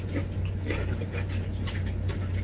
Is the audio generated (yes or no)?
no